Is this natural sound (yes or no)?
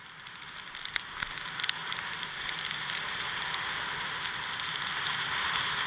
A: yes